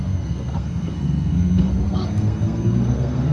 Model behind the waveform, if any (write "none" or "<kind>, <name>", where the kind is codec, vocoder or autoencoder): codec, SNAC